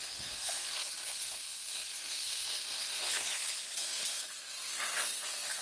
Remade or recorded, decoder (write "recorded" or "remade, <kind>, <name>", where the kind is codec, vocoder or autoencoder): remade, codec, SNAC